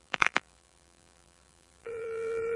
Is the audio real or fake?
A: fake